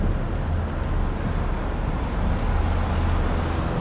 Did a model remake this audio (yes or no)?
no